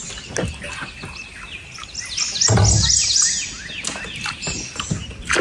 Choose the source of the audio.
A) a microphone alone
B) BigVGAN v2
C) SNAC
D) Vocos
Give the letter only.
A